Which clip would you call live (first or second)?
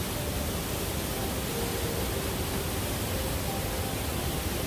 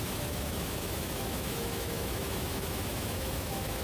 first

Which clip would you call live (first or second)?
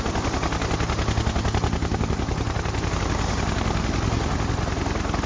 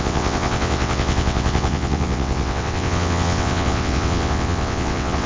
first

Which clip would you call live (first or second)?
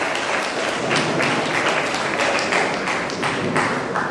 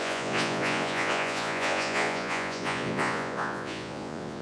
first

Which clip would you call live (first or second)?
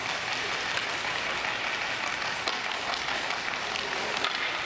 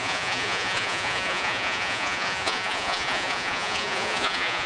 first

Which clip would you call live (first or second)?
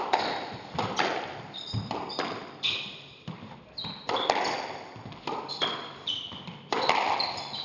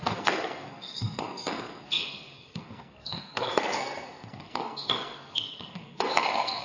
first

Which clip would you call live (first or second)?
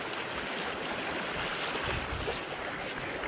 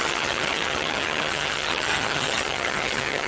first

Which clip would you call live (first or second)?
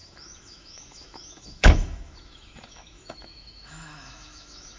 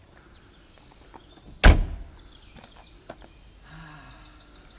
second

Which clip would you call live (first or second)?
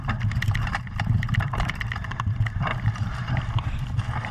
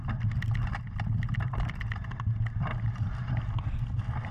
second